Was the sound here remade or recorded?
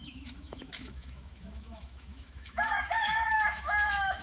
remade